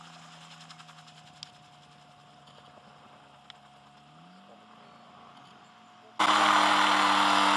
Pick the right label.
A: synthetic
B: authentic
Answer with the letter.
B